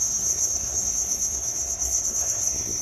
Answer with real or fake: fake